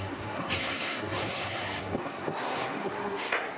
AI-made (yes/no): yes